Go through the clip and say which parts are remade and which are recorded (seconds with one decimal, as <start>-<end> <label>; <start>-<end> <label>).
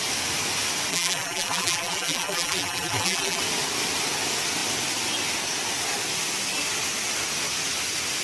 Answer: 0.0-0.9 recorded; 0.9-3.4 remade; 3.4-8.2 recorded